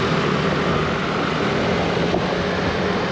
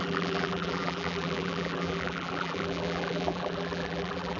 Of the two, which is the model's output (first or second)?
second